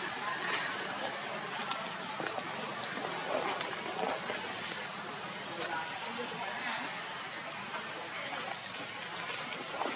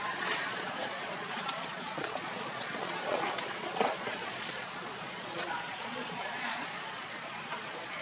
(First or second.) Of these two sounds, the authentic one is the first